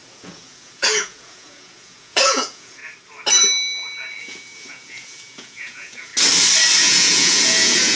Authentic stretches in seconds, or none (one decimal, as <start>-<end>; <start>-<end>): 2.8-4.2; 6.1-6.8